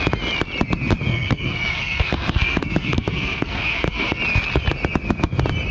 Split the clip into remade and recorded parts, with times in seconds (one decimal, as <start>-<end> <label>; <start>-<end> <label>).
0.0-1.1 recorded; 1.1-4.2 remade; 4.2-5.7 recorded